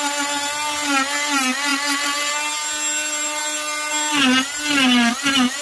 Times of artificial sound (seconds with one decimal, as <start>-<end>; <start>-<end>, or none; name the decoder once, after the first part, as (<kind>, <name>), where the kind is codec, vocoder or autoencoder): none